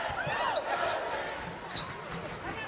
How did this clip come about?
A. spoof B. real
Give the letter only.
B